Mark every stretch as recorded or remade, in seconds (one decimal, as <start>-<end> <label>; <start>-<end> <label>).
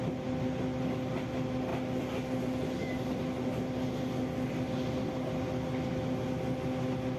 0.0-7.2 recorded